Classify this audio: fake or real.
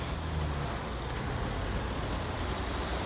real